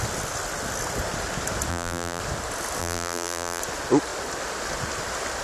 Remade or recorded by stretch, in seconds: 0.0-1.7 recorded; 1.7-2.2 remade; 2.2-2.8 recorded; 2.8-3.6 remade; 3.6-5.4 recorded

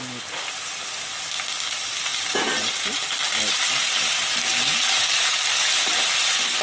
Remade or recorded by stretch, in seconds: 0.0-2.1 recorded; 2.1-6.1 remade; 6.1-6.6 recorded